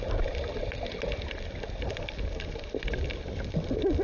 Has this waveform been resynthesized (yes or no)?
no